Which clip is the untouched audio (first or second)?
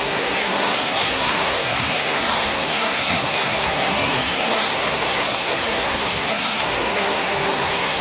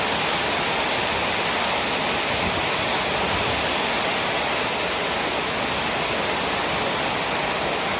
second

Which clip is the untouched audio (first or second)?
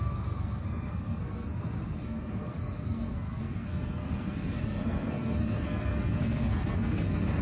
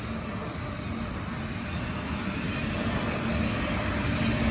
second